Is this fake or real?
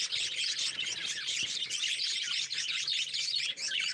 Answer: real